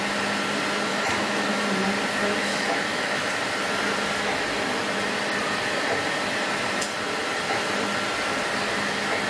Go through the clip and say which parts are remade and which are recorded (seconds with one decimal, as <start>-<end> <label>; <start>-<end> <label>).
0.0-0.9 recorded; 0.9-1.6 remade; 1.6-2.5 recorded; 2.5-3.3 remade; 3.3-9.3 recorded